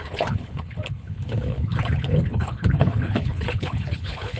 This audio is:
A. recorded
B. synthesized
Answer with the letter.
B